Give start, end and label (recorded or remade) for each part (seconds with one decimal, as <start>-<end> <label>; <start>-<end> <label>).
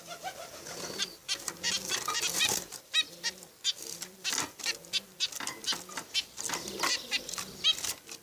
0.0-8.2 recorded